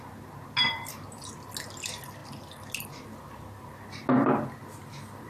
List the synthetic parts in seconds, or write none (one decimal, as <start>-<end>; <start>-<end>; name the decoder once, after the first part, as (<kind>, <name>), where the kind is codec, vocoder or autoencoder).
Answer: none